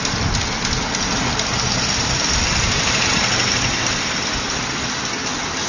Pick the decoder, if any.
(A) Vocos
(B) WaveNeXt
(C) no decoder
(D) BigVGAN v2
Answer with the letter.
C